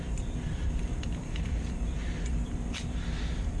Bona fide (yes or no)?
no